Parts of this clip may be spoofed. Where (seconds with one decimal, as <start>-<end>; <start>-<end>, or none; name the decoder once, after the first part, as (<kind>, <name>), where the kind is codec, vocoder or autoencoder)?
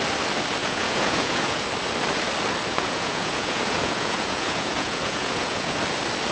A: 0.6-1.6 (vocoder, Vocos); 2.7-5.8